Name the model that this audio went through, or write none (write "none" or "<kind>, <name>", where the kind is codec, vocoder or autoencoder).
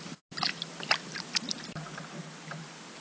none